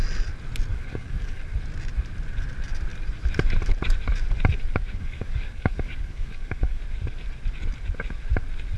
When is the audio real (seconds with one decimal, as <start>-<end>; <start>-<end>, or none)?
0.0-0.7; 1.4-4.7; 6.8-8.8

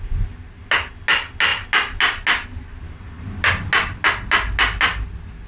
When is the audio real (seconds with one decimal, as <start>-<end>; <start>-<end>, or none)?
0.0-5.5

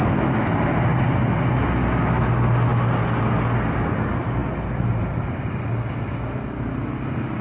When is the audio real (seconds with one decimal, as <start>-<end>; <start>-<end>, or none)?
0.0-7.4

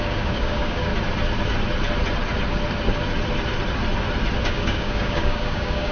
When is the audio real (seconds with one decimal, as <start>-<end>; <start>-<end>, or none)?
0.9-4.4

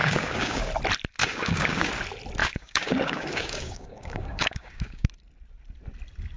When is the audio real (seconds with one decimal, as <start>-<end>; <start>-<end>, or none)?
0.7-1.2; 1.9-2.4; 5.1-6.4

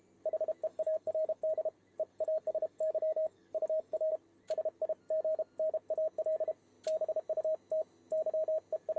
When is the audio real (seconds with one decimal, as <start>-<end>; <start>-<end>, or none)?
0.0-0.7; 1.4-2.1; 4.1-9.0

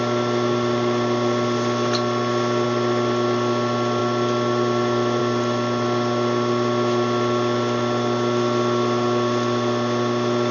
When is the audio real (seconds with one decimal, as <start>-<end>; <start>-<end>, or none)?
0.0-10.5